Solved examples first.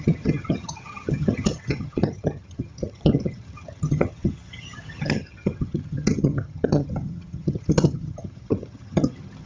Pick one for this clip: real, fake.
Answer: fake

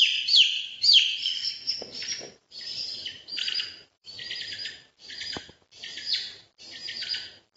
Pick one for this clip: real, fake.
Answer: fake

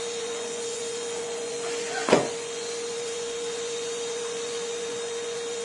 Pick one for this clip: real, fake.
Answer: fake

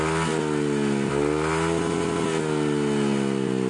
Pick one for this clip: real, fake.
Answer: real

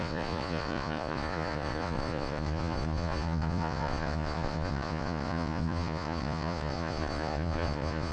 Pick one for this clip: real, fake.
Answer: fake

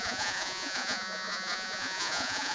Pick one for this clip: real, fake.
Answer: fake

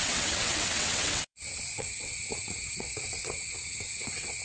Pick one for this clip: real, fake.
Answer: fake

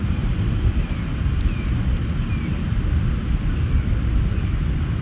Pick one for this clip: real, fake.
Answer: real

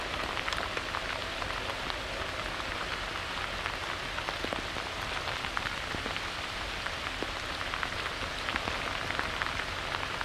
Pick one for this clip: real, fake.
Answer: real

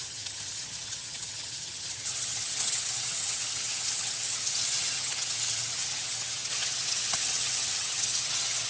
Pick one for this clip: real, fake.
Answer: fake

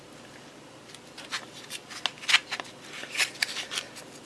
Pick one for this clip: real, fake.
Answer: real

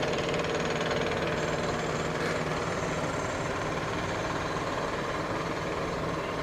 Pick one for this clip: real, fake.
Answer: fake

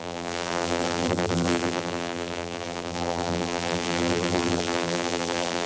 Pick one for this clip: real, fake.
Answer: fake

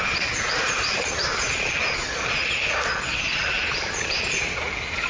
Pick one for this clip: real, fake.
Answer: real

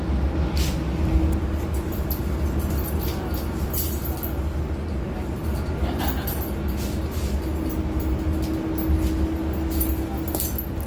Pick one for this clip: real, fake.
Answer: real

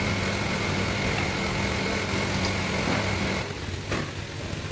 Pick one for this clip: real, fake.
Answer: real